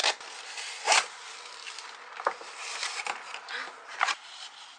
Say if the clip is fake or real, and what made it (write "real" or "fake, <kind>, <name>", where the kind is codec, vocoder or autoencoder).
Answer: real